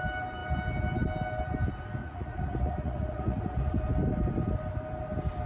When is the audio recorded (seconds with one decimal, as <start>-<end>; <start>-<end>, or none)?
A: 0.0-2.0; 3.7-5.5